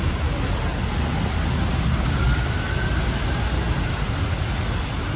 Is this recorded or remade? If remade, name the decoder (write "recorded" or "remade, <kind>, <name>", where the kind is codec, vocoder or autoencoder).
recorded